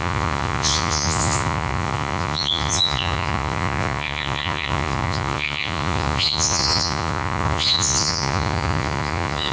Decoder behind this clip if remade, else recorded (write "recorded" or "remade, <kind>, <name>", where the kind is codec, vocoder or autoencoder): remade, vocoder, Vocos